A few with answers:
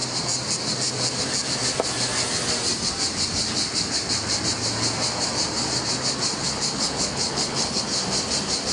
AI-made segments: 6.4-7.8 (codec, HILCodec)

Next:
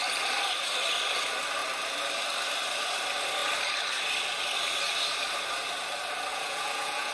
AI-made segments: 6.3-7.1 (vocoder, Vocos)

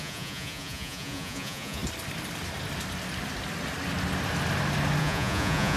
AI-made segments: 0.0-1.8 (vocoder, Vocos); 5.0-5.8

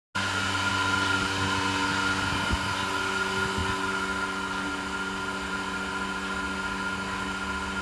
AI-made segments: none

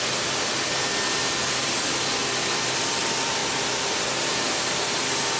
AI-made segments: 0.0-3.4 (vocoder, BigVGAN v2)

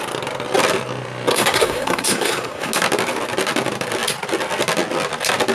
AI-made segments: 1.3-2.7 (codec, SNAC)

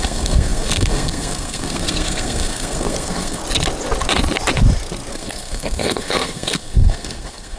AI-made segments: 0.0-3.4 (codec, SNAC); 5.1-7.6